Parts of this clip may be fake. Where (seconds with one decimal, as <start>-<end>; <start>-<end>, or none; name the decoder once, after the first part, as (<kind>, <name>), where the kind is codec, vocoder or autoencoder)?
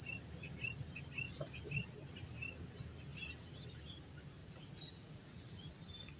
4.4-5.7 (vocoder, Vocos)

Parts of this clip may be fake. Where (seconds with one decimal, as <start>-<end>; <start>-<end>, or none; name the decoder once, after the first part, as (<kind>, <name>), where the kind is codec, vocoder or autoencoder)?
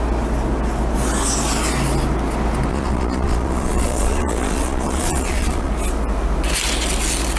2.7-5.7 (vocoder, Vocos)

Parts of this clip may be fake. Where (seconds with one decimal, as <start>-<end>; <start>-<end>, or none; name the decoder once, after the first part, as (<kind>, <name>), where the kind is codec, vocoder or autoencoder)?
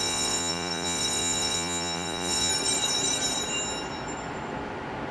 0.0-2.5 (vocoder, Vocos)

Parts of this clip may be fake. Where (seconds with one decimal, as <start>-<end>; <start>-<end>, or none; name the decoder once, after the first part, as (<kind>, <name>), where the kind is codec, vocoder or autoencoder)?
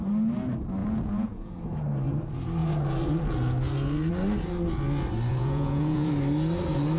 0.8-1.6 (vocoder, Vocos); 5.3-6.1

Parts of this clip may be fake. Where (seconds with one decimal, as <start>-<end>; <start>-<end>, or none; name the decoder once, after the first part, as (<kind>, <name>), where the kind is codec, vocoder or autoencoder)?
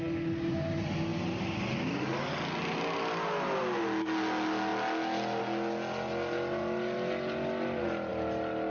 none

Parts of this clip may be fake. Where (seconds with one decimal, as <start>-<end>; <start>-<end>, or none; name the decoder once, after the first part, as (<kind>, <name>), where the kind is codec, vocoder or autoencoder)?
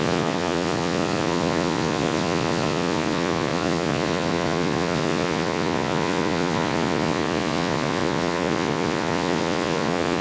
0.0-10.2 (vocoder, Vocos)